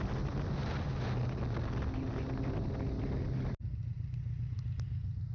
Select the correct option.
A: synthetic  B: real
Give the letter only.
B